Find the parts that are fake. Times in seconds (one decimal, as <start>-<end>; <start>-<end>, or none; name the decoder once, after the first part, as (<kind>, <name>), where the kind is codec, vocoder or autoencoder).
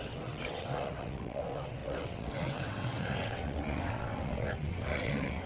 0.0-5.5 (vocoder, WaveNeXt)